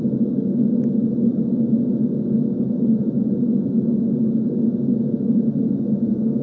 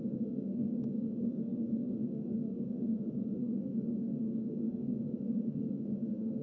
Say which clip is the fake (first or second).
second